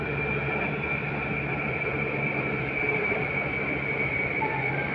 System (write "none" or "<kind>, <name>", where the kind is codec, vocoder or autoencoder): vocoder, BigVGAN v2